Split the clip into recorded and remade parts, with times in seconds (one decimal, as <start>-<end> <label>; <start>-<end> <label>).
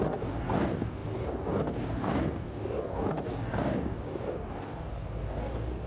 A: 0.0-5.9 remade